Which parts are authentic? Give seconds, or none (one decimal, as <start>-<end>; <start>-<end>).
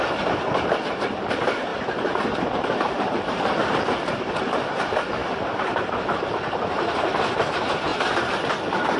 7.9-9.0